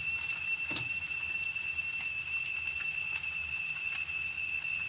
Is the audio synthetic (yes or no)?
no